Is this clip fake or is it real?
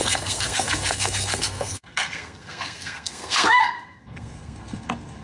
fake